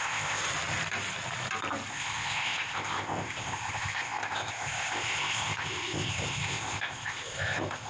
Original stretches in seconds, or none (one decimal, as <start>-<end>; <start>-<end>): 0.4-1.9

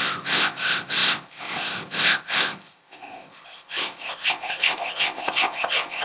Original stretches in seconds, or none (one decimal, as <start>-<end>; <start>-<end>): none

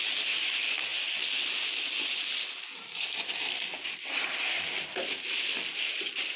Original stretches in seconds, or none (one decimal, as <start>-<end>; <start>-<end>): 0.0-6.4

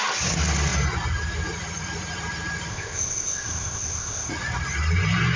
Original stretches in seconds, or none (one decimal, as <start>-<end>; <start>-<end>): 0.0-2.7; 4.3-5.4

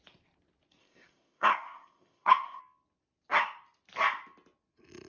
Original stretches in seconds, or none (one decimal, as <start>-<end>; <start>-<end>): 0.0-0.8; 2.6-5.1